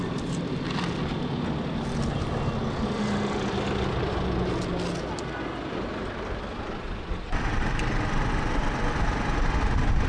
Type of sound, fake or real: real